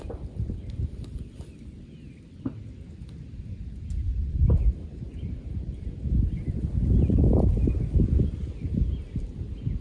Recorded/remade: recorded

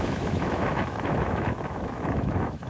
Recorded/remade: remade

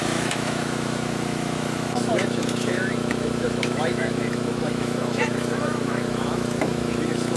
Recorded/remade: remade